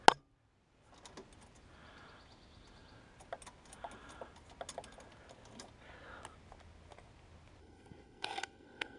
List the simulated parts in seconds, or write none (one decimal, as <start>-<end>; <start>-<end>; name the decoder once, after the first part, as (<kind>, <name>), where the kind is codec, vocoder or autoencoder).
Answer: 7.6-9.0 (codec, SNAC)